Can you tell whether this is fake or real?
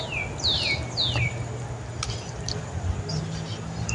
real